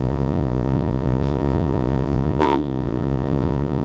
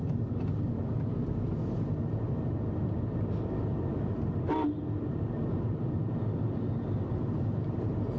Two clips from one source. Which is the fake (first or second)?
first